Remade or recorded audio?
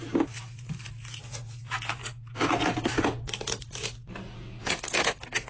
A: recorded